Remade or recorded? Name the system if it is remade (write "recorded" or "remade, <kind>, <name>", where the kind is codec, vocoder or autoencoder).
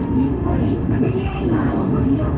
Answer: remade, autoencoder, DAC-VAE